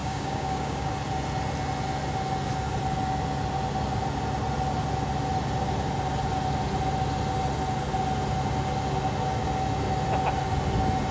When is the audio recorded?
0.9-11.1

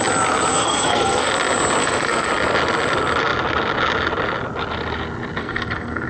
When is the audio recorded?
0.0-0.5; 1.3-1.8; 2.3-5.4

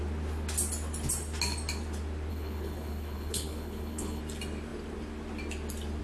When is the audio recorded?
0.0-2.3; 4.2-6.0

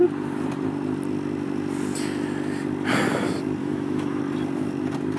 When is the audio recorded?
0.0-3.6; 4.2-5.2

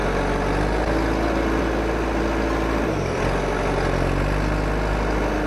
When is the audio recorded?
0.0-5.5

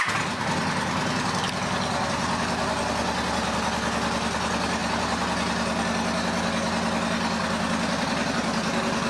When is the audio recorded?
0.0-9.1

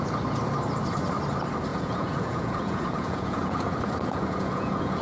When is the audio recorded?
0.0-1.7